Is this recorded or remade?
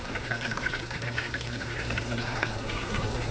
remade